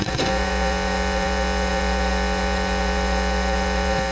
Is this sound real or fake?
fake